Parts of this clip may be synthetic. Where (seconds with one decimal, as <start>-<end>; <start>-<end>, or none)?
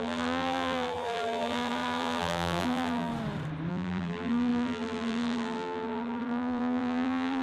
0.0-3.1; 3.7-7.4